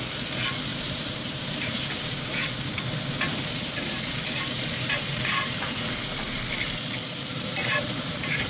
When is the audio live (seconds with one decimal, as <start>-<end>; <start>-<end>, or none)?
0.0-0.7; 5.8-7.2